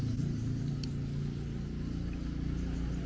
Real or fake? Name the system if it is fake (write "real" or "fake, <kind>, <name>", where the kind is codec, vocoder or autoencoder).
real